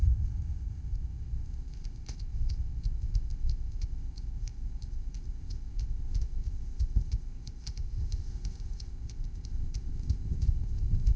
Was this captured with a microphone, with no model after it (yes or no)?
no